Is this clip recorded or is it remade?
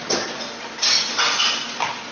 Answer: recorded